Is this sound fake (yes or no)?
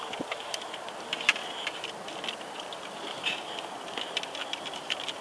no